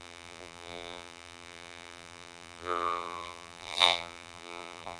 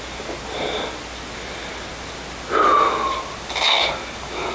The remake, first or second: first